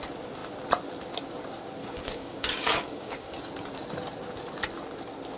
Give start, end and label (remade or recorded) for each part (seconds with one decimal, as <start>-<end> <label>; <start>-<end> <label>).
0.0-1.8 recorded; 1.8-3.5 remade; 3.5-5.4 recorded